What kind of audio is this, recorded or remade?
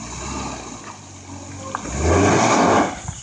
recorded